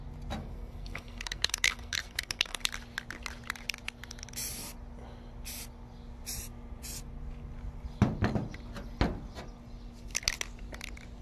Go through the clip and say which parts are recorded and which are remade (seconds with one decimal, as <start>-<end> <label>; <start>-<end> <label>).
0.0-0.4 recorded; 0.4-2.6 remade; 2.6-11.2 recorded